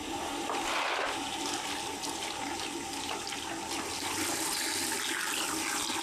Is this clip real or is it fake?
real